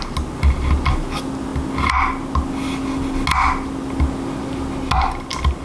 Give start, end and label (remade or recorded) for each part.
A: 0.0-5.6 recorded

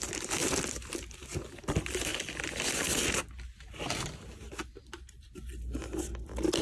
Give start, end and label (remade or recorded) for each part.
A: 0.0-0.4 recorded; 0.4-1.5 remade; 1.5-6.6 recorded

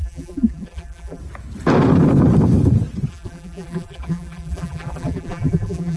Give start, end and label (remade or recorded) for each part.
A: 0.0-1.2 remade; 1.2-3.1 recorded; 3.1-6.0 remade

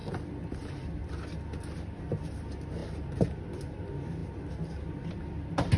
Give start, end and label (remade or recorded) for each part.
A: 0.0-1.1 remade; 1.1-5.8 recorded

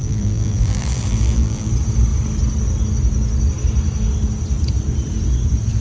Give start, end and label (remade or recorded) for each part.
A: 0.0-1.7 remade; 1.7-5.8 recorded